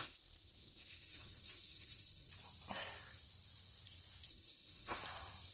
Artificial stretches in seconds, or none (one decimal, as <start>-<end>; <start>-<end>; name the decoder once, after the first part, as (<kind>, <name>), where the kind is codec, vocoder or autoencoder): 0.0-2.3 (autoencoder, DAC-VAE); 4.3-5.0